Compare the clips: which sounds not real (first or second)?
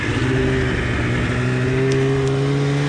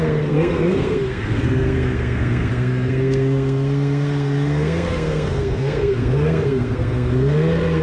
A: second